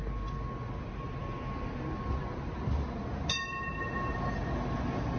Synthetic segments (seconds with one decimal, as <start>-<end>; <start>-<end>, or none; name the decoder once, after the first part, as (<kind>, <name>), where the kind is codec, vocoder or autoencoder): none